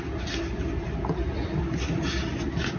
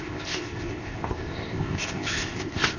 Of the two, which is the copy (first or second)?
second